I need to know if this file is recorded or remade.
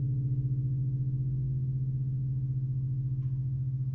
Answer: recorded